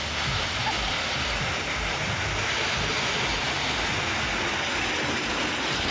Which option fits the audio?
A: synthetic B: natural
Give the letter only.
B